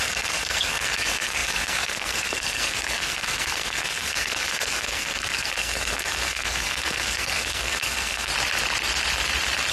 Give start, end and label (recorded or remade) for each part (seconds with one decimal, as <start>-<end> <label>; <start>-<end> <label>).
0.0-8.3 remade; 8.3-9.7 recorded

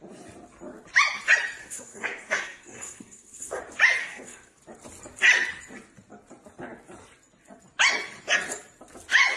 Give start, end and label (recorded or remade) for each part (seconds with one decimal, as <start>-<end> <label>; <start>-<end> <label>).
0.0-1.6 recorded; 1.6-3.6 remade; 3.6-4.0 recorded; 4.0-4.6 remade; 4.6-9.4 recorded

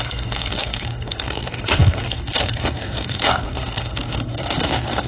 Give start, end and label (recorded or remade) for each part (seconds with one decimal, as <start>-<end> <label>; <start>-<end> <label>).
0.0-5.1 remade

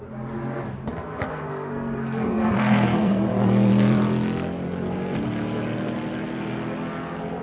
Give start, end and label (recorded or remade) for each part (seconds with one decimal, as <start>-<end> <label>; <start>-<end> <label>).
0.0-0.9 recorded; 0.9-3.3 remade; 3.3-7.4 recorded

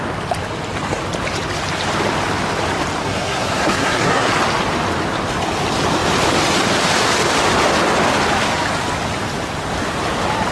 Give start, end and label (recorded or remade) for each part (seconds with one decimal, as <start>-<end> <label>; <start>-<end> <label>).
0.0-3.0 recorded; 3.0-4.3 remade; 4.3-10.5 recorded